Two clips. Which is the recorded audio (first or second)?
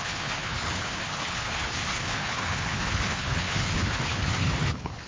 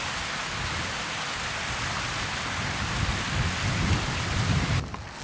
second